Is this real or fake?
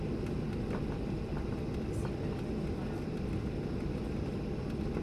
real